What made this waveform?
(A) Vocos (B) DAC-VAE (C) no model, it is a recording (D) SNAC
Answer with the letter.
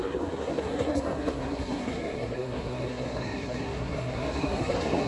D